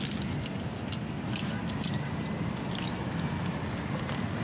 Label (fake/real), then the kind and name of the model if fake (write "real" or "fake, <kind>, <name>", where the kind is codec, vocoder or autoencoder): real